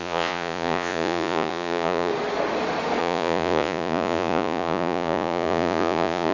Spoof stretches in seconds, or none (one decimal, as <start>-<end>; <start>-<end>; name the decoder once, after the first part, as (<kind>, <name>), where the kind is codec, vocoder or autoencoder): 0.0-2.1 (vocoder, Vocos); 3.0-6.3